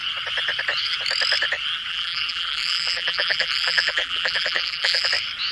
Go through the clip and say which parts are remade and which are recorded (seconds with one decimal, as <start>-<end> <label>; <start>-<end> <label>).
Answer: 0.0-1.9 recorded; 1.9-5.1 remade; 5.1-5.5 recorded